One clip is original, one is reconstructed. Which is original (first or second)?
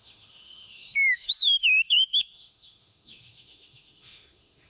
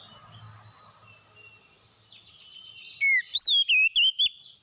second